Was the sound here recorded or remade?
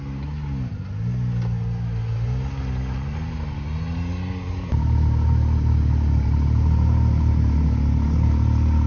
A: recorded